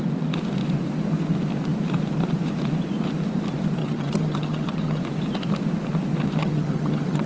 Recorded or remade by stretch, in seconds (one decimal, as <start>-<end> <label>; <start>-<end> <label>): 0.0-3.8 recorded; 3.8-5.0 remade; 5.0-6.4 recorded; 6.4-7.3 remade